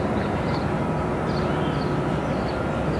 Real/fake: real